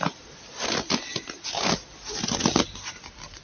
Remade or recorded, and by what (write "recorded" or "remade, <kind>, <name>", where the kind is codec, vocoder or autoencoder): recorded